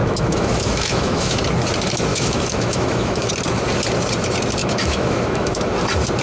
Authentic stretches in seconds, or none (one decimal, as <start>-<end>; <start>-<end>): 1.4-2.1; 3.3-4.6; 5.7-6.2